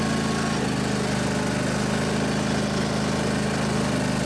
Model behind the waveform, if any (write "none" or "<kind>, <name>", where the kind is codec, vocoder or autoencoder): none